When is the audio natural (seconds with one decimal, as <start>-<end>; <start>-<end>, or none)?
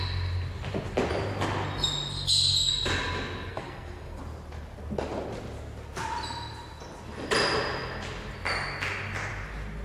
0.0-3.5; 4.2-9.8